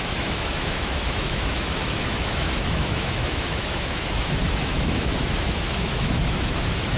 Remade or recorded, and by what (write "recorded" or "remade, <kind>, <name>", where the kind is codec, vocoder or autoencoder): remade, autoencoder, DAC-VAE